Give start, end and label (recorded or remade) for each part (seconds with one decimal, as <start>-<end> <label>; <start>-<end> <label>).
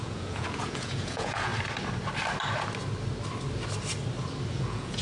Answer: 0.0-1.5 remade; 1.5-4.5 recorded; 4.5-5.0 remade